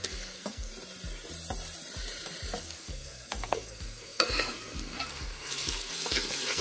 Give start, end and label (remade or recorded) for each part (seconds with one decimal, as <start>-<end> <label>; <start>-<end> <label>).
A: 0.0-0.7 remade; 0.7-2.6 recorded; 2.6-6.6 remade